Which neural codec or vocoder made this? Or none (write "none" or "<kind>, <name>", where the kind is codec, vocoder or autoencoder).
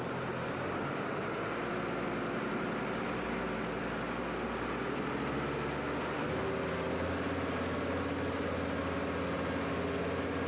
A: none